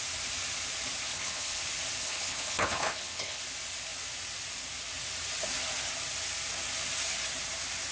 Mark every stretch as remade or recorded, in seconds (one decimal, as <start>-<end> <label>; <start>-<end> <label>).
0.0-1.1 recorded; 1.1-1.6 remade; 1.6-2.0 recorded; 2.0-3.4 remade; 3.4-7.9 recorded